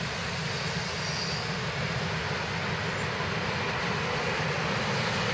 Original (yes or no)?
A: yes